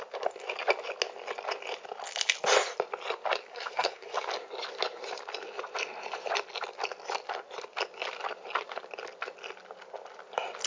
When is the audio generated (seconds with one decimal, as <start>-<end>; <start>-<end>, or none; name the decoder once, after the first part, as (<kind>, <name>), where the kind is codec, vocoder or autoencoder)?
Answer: 3.5-4.2 (codec, SNAC)